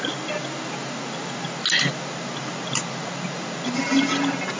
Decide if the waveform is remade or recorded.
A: recorded